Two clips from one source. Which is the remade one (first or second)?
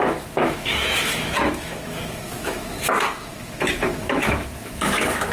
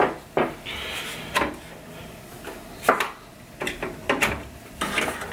first